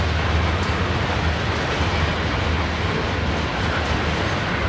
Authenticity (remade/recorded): recorded